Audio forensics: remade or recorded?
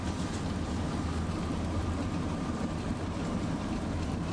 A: remade